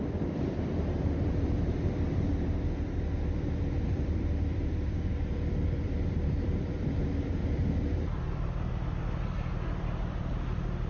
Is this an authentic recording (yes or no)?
no